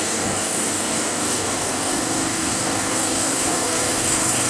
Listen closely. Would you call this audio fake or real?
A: fake